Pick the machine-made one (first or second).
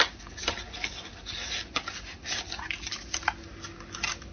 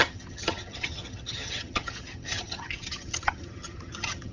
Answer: second